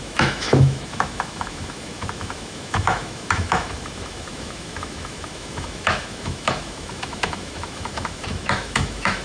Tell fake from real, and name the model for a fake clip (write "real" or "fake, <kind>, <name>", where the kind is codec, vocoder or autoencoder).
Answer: fake, autoencoder, DAC-VAE